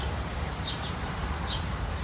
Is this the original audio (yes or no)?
no